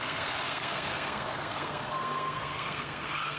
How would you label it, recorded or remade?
remade